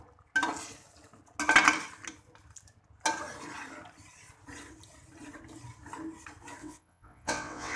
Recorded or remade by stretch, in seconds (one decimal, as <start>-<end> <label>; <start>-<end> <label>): 0.0-6.6 recorded; 6.6-7.8 remade